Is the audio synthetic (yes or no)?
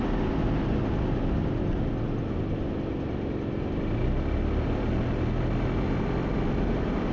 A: no